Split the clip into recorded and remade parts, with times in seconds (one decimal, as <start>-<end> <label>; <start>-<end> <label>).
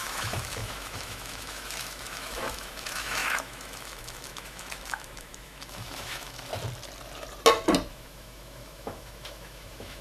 0.0-6.5 remade; 6.5-7.9 recorded; 7.9-10.0 remade